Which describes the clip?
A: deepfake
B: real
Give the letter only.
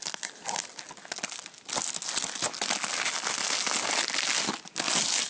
B